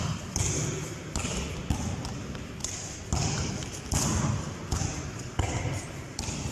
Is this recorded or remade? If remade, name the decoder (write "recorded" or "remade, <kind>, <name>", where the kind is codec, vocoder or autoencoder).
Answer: recorded